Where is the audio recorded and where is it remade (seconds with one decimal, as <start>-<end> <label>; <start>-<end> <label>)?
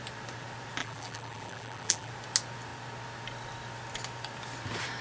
0.0-0.8 recorded; 0.8-2.1 remade; 2.1-5.0 recorded